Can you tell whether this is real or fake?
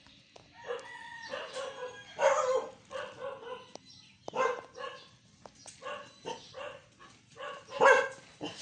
real